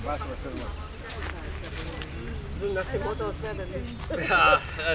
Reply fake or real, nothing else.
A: real